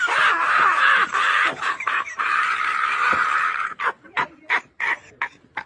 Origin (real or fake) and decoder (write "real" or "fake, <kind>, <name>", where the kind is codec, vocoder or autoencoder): fake, vocoder, BigVGAN v2